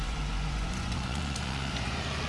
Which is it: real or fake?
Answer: fake